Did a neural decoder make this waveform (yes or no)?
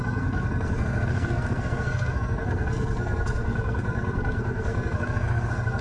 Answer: yes